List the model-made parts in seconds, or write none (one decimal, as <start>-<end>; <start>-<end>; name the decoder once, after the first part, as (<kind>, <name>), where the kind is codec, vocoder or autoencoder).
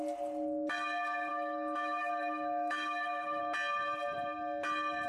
1.3-3.4 (autoencoder, DAC-VAE)